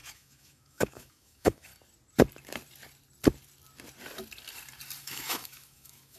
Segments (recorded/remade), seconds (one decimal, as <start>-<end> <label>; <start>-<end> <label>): 0.0-1.7 remade; 1.7-5.0 recorded; 5.0-6.2 remade